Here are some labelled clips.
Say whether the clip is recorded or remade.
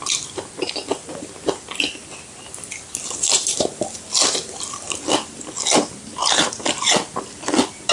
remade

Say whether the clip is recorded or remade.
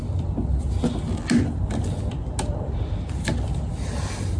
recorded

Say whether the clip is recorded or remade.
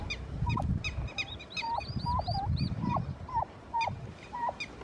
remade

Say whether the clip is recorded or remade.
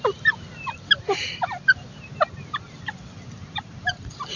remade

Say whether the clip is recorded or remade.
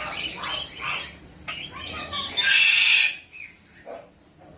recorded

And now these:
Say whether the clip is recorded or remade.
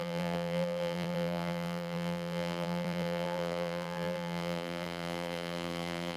remade